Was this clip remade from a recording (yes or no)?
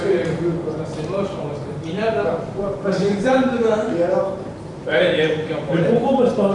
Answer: yes